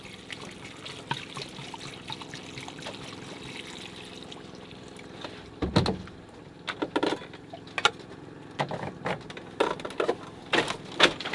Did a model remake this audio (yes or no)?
no